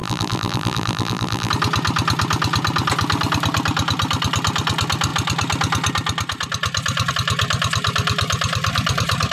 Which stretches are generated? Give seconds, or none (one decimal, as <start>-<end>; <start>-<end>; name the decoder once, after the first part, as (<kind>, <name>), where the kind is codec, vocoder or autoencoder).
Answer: 0.0-1.5 (vocoder, BigVGAN v2)